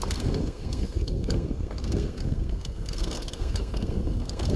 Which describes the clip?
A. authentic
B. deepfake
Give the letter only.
B